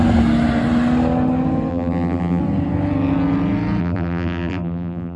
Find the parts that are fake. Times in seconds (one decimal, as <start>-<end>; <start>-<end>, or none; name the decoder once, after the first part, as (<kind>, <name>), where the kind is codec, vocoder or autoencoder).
1.7-2.4 (vocoder, BigVGAN v2); 3.8-5.2